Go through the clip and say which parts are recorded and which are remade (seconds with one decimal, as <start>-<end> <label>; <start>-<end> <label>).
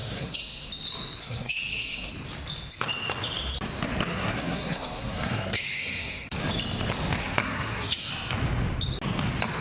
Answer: 0.0-0.7 remade; 0.7-1.2 recorded; 1.2-2.1 remade; 2.1-4.1 recorded; 4.1-6.4 remade; 6.4-7.2 recorded; 7.2-8.1 remade; 8.1-9.6 recorded